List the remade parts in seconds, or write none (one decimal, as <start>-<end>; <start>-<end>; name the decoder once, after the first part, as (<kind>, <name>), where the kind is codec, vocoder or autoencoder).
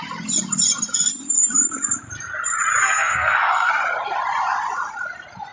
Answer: 2.8-3.7 (codec, SNAC)